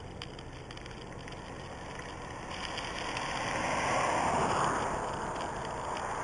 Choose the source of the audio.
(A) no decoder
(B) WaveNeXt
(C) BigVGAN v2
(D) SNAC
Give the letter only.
A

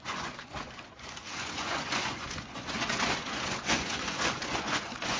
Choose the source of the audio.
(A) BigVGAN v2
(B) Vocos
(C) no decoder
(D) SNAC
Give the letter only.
B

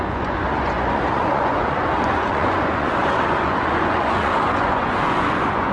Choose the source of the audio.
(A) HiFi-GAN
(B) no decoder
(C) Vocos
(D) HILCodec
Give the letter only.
C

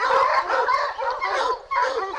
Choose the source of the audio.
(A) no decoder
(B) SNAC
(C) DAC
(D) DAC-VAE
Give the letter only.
A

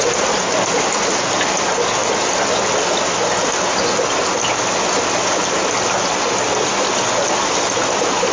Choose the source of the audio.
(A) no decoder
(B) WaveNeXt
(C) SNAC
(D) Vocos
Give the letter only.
A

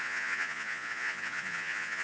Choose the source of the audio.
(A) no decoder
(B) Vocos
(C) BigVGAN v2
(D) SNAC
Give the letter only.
B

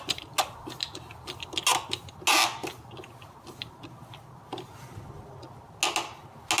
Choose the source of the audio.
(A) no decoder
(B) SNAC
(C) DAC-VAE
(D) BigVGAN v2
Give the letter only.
A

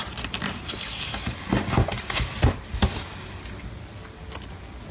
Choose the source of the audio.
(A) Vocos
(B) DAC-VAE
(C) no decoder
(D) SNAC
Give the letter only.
C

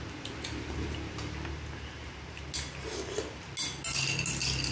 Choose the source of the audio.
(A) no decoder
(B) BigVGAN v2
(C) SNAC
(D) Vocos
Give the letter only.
A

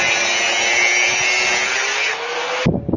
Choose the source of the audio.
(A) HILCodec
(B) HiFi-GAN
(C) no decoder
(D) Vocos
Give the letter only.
C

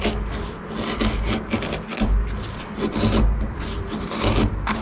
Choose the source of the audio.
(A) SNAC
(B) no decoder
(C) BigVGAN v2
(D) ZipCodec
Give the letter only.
B